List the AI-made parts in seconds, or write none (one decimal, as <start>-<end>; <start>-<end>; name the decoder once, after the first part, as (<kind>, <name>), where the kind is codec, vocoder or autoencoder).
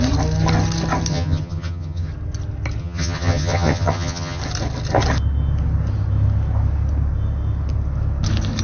1.1-2.1 (vocoder, HiFi-GAN); 2.8-4.4